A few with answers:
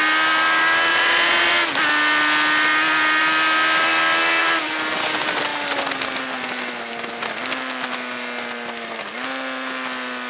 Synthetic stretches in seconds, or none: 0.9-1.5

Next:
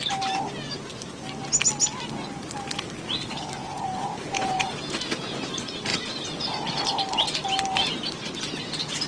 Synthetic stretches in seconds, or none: 3.6-5.5; 5.9-6.4

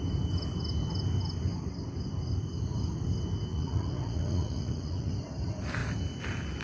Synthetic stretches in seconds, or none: 3.5-5.1

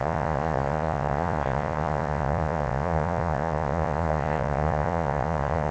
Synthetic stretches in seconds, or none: 0.0-5.7